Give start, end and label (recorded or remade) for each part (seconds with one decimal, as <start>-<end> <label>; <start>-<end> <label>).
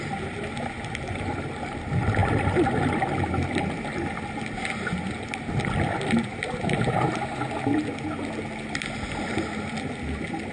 0.0-10.5 recorded